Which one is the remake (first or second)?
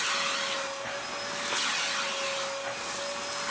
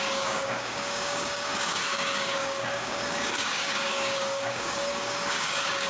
second